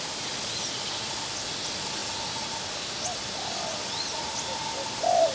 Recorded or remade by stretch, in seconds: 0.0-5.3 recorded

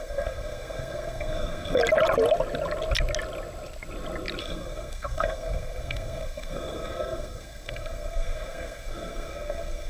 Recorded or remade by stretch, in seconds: 0.0-1.8 remade; 1.8-4.4 recorded; 4.4-9.9 remade

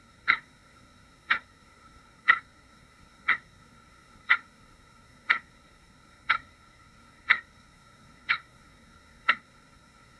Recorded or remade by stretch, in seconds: 0.0-10.2 remade

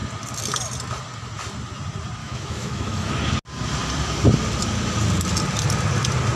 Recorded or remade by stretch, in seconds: 0.0-2.2 recorded; 2.2-3.1 remade; 3.1-6.4 recorded

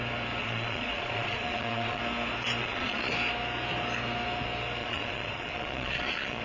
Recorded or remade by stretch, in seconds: 0.0-0.4 recorded; 0.4-2.0 remade; 2.0-2.6 recorded; 2.6-3.1 remade; 3.1-4.8 recorded; 4.8-6.4 remade

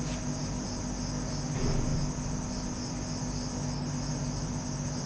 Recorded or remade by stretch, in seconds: 0.0-5.1 recorded